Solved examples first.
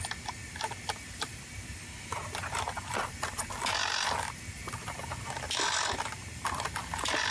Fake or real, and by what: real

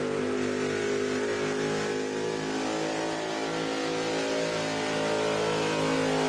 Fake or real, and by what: real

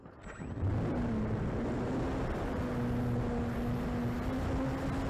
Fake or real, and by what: real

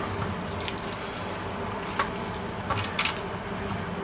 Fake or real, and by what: real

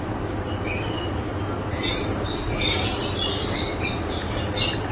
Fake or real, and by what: real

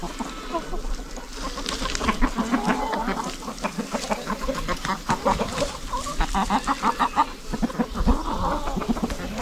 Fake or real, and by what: real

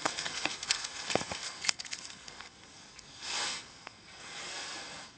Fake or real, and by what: fake, codec, SNAC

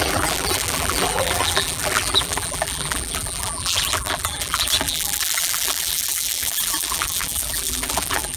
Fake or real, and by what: fake, vocoder, BigVGAN v2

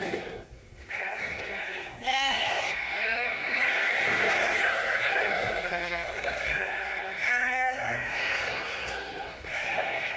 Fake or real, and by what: fake, codec, SNAC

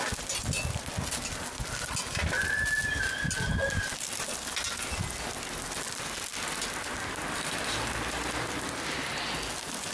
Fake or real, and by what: real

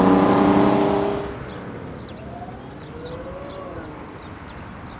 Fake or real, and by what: real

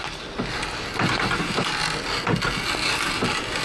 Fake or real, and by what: real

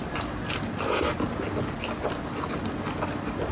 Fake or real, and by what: real